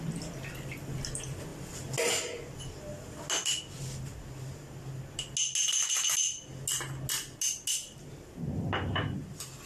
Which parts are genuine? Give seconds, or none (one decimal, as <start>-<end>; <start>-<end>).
0.0-9.7